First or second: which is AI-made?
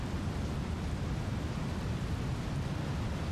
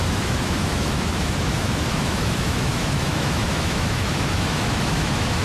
second